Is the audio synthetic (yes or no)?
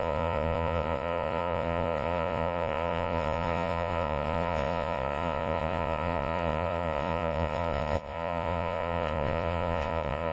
yes